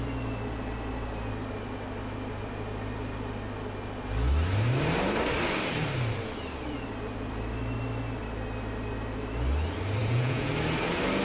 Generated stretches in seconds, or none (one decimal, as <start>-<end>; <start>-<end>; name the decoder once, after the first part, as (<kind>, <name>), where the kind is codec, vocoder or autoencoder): 10.0-10.5 (vocoder, Vocos)